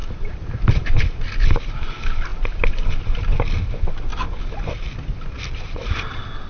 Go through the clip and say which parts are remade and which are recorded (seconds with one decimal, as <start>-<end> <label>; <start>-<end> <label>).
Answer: 0.0-6.5 recorded